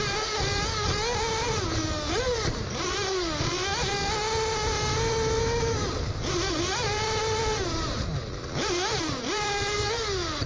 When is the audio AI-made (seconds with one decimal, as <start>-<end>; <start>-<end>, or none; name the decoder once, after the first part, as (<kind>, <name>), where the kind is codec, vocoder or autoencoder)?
none